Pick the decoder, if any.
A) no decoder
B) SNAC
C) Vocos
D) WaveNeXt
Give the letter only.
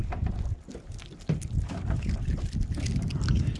A